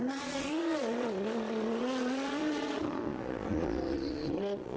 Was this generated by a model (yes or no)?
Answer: yes